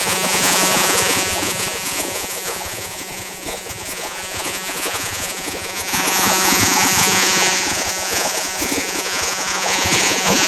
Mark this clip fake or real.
fake